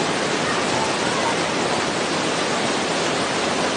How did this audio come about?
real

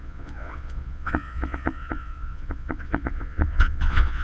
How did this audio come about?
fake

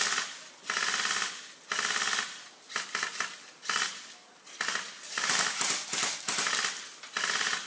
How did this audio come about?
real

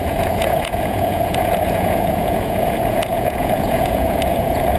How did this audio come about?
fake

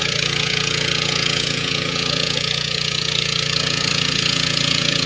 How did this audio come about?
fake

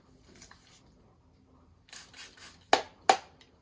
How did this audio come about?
real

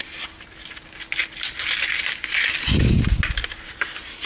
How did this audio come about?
real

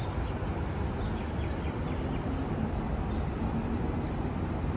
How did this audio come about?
real